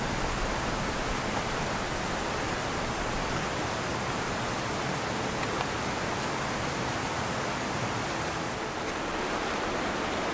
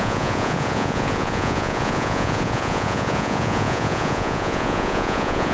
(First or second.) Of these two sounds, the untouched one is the first